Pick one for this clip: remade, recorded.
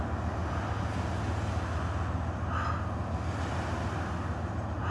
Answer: recorded